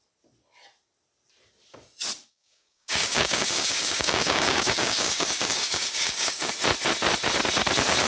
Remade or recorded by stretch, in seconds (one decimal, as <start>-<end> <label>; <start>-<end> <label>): 0.0-2.3 recorded; 2.3-6.5 remade; 6.5-8.1 recorded